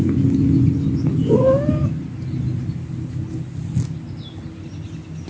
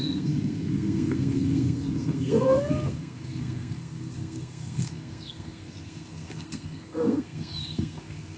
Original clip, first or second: first